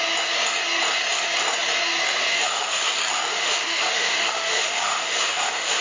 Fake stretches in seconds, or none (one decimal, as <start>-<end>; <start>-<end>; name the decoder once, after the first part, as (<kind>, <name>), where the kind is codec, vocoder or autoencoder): 2.3-2.8 (autoencoder, DAC-VAE); 3.3-5.8